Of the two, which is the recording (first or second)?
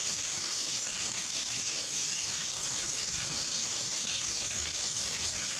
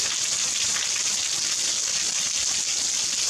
second